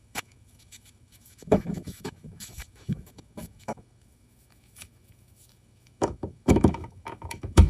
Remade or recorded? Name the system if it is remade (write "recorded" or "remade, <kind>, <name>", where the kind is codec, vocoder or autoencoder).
remade, autoencoder, DAC-VAE